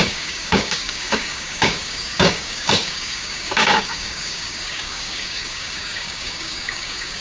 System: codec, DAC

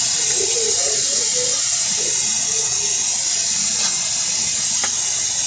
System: none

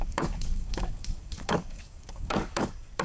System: codec, DAC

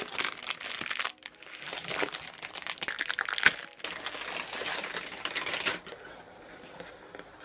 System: none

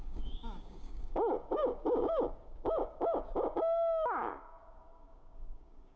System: codec, DAC